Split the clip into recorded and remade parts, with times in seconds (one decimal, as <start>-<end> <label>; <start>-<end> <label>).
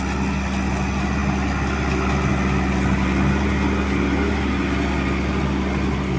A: 0.0-6.2 recorded